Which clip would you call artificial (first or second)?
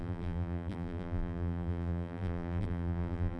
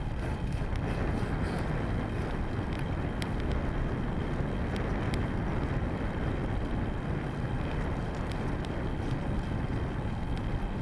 first